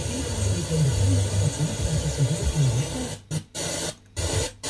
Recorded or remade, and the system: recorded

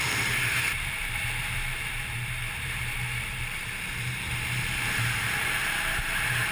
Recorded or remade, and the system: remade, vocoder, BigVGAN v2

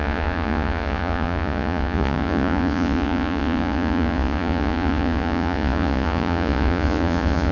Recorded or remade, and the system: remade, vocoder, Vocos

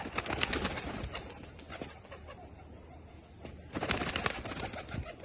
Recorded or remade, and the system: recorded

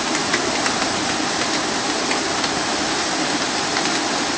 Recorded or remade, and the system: recorded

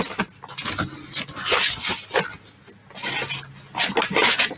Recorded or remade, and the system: recorded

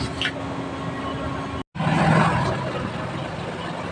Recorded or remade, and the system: recorded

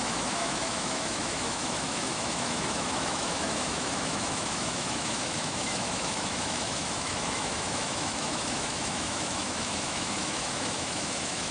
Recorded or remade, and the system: remade, autoencoder, DAC-VAE